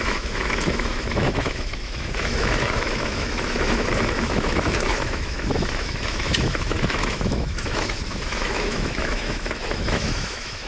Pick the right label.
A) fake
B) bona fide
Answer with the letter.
A